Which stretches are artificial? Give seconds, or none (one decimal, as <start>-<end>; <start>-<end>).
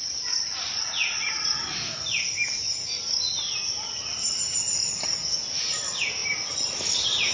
none